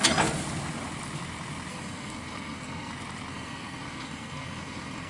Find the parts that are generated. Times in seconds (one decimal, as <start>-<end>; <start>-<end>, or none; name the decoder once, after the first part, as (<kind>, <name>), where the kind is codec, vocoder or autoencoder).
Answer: 1.7-2.9 (codec, SNAC); 3.3-5.1